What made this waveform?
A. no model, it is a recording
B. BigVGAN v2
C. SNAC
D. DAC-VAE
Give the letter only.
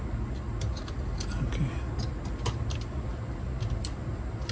A